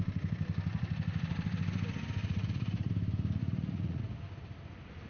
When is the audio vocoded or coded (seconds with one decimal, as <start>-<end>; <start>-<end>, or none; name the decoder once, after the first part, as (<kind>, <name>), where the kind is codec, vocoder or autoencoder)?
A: 2.2-2.9 (vocoder, Vocos); 3.4-4.0

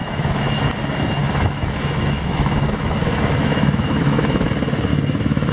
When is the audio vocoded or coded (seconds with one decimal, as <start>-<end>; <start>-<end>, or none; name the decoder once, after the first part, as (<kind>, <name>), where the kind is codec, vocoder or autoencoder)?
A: 0.0-0.6 (autoencoder, DAC-VAE); 1.2-4.5; 4.9-5.5

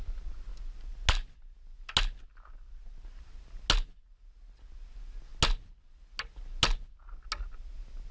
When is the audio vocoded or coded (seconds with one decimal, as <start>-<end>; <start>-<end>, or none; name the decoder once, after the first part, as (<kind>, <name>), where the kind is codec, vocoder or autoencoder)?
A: none

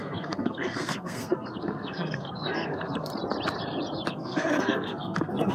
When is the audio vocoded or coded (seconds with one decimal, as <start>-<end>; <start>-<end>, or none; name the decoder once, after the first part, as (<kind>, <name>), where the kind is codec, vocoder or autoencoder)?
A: 0.0-3.1 (codec, SNAC); 4.1-5.5

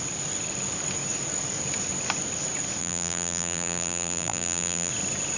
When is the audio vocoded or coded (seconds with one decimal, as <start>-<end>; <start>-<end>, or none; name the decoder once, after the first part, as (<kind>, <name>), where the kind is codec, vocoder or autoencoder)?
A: 2.8-4.9 (vocoder, BigVGAN v2)

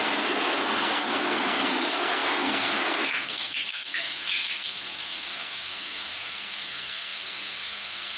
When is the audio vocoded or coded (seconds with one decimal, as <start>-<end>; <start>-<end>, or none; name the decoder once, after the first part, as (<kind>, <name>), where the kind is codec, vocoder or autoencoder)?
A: 0.0-8.2 (codec, SNAC)